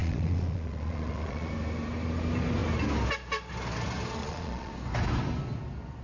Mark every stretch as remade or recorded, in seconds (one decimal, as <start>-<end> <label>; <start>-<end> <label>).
0.0-1.5 remade; 1.5-4.2 recorded; 4.2-4.7 remade; 4.7-6.0 recorded